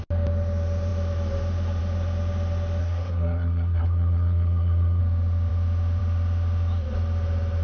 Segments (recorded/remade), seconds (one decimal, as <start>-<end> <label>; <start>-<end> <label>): 0.0-2.8 recorded; 2.8-5.0 remade; 5.0-7.6 recorded